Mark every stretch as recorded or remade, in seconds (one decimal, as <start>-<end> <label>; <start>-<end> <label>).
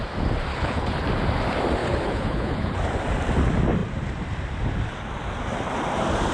0.0-0.5 recorded; 0.5-1.0 remade; 1.0-1.8 recorded; 1.8-2.8 remade; 2.8-6.3 recorded